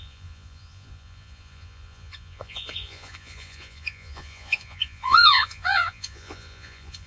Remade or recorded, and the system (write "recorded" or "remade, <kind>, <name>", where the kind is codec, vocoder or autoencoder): remade, vocoder, Vocos